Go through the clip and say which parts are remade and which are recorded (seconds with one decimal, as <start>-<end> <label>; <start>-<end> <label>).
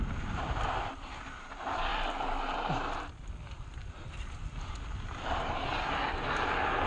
0.0-6.9 recorded